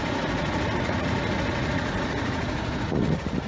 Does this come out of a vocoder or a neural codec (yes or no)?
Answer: yes